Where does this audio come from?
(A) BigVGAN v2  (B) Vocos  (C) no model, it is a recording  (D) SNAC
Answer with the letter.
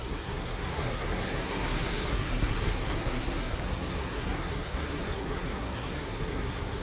D